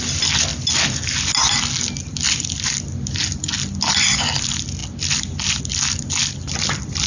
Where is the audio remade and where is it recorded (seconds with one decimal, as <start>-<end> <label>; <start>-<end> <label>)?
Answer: 0.0-7.1 recorded